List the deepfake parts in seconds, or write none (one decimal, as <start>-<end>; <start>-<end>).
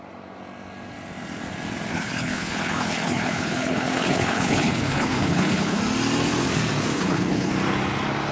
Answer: 1.9-5.8; 6.9-7.5